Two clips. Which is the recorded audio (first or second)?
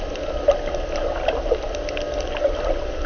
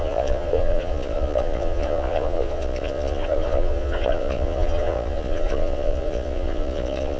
first